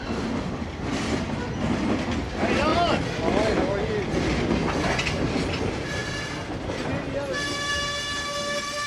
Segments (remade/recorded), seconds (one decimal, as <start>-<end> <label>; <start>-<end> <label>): 0.0-8.9 recorded